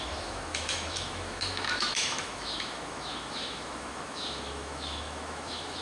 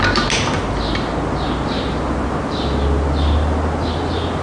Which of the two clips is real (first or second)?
second